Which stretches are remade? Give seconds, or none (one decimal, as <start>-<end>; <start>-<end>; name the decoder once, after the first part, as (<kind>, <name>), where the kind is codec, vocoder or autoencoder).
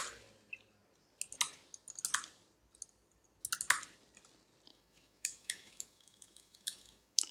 4.7-7.3 (autoencoder, DAC-VAE)